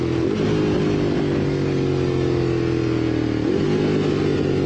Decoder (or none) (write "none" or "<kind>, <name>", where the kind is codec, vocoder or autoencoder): none